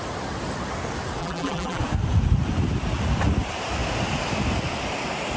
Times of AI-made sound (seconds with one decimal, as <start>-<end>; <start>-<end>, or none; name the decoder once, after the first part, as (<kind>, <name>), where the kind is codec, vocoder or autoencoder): 1.2-1.8 (vocoder, BigVGAN v2)

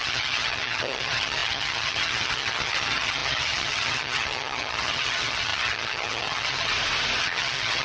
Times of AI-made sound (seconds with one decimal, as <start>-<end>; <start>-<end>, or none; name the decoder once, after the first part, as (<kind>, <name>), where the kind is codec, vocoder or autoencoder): 0.0-6.7 (vocoder, HiFi-GAN); 7.2-7.8

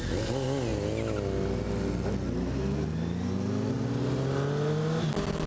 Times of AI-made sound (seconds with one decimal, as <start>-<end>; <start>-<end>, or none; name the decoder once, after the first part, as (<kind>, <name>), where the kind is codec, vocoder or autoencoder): none

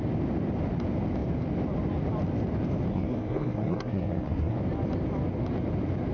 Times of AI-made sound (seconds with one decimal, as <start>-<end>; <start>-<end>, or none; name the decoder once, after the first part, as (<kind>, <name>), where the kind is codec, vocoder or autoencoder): 2.9-4.6 (codec, SNAC)

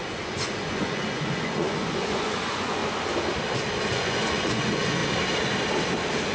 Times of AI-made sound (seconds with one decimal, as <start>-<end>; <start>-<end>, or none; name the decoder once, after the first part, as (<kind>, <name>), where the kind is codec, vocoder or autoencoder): 0.0-2.8 (vocoder, Vocos); 3.9-5.0

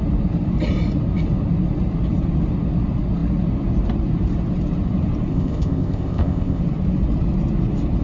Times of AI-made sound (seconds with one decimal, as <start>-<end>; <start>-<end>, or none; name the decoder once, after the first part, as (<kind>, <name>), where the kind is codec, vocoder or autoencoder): 5.3-6.6 (codec, ZipCodec)

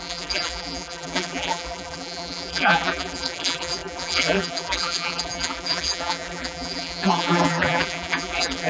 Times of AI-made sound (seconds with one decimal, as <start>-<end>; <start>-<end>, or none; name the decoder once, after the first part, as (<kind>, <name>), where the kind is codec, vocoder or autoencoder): 0.0-8.7 (vocoder, BigVGAN v2)